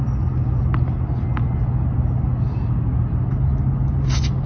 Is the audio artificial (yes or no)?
no